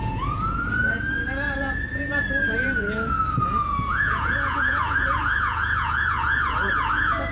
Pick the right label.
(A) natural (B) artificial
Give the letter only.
B